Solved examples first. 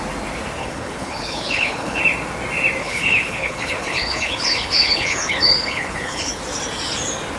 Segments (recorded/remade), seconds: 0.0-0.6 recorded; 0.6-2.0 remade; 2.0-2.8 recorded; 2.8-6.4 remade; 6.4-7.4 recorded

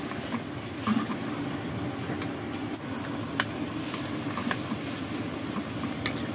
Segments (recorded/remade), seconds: 0.0-4.4 recorded; 4.4-5.6 remade; 5.6-6.3 recorded

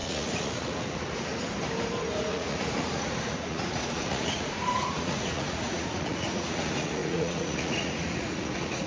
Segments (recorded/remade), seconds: 0.0-1.3 remade; 1.3-2.3 recorded; 2.3-8.9 remade

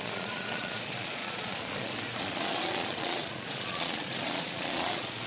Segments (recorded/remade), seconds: 0.0-5.3 remade

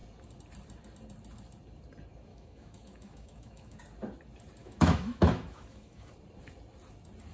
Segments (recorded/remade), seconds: 0.0-2.3 recorded; 2.3-3.8 remade; 3.8-4.6 recorded; 4.6-6.1 remade; 6.1-7.3 recorded

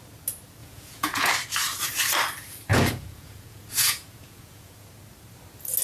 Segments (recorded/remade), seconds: 0.0-0.6 recorded; 0.6-1.3 remade; 1.3-2.7 recorded; 2.7-4.9 remade; 4.9-5.8 recorded

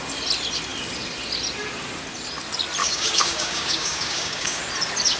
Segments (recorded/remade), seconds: 0.0-2.8 recorded; 2.8-4.6 remade; 4.6-5.2 recorded

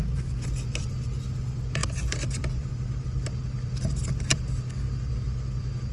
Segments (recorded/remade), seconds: 0.0-1.8 recorded; 1.8-2.7 remade; 2.7-5.9 recorded